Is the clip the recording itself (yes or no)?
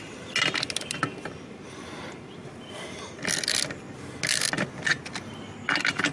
yes